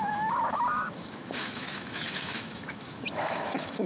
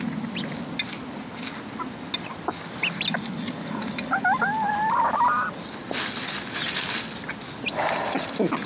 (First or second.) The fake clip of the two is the first